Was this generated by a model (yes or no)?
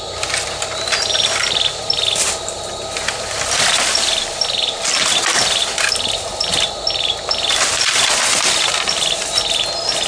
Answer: no